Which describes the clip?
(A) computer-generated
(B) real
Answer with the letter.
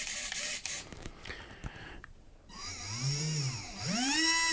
A